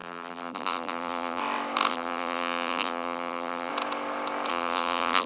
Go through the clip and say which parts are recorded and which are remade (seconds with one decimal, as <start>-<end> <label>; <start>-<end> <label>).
0.0-1.4 remade; 1.4-1.9 recorded; 1.9-3.7 remade; 3.7-4.5 recorded; 4.5-5.3 remade